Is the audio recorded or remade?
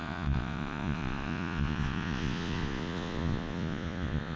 remade